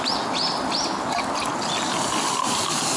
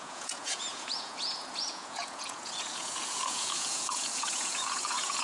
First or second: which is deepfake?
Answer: second